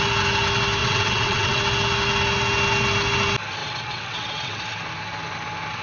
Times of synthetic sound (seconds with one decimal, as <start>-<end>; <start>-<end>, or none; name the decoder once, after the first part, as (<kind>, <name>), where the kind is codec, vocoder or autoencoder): 0.8-1.6 (vocoder, WaveNeXt); 3.6-4.6